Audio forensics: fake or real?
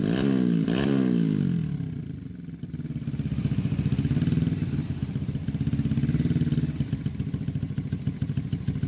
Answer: real